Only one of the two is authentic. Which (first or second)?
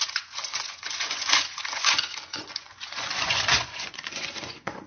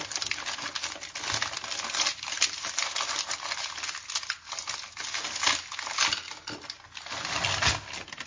second